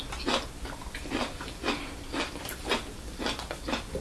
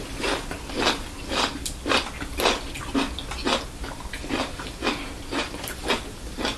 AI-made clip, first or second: second